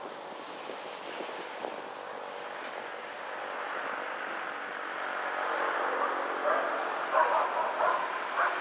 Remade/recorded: recorded